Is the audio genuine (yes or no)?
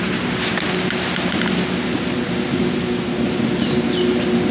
yes